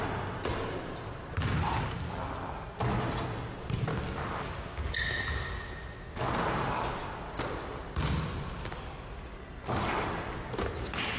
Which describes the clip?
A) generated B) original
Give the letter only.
B